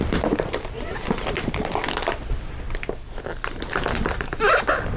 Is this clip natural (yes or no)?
yes